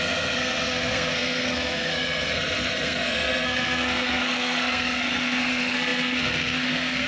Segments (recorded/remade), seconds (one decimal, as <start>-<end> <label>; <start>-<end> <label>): 0.0-7.1 remade